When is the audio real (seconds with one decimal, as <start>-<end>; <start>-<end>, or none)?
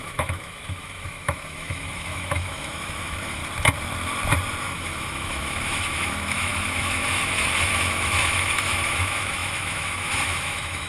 3.4-4.7